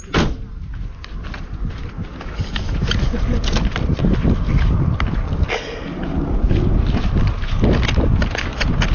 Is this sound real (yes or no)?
yes